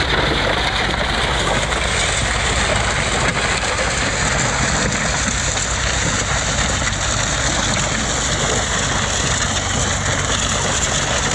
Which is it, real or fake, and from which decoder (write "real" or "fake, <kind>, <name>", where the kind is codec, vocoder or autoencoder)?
real